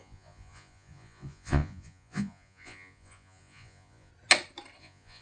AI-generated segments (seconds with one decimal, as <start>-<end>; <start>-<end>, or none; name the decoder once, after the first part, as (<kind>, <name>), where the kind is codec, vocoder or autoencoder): 0.0-4.1 (vocoder, Vocos); 4.8-5.2